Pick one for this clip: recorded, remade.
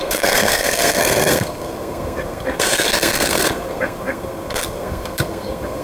remade